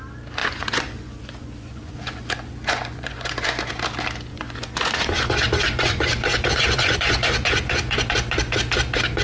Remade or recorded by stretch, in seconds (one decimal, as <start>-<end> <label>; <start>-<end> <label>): 0.0-0.4 recorded; 0.4-3.7 remade; 3.7-4.3 recorded; 4.3-8.1 remade; 8.1-9.2 recorded